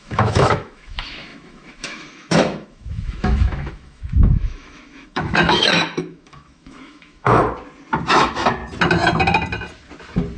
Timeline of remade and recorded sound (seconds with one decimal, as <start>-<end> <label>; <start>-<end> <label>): 0.0-7.4 remade; 7.4-8.1 recorded; 8.1-8.6 remade; 8.6-10.4 recorded